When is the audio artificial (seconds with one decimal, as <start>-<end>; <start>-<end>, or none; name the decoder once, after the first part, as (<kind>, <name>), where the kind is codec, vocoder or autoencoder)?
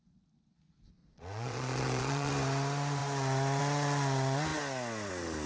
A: 1.0-2.3 (vocoder, Vocos)